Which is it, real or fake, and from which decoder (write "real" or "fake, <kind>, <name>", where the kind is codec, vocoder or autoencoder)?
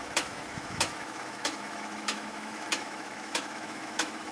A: fake, autoencoder, DAC-VAE